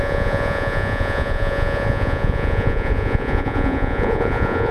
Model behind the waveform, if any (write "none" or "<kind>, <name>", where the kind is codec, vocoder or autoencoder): vocoder, Vocos